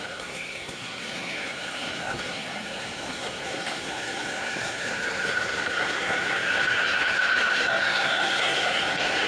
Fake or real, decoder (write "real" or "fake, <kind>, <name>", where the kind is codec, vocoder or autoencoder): fake, codec, SNAC